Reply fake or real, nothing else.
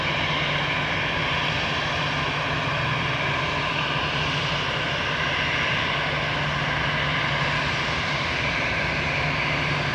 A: real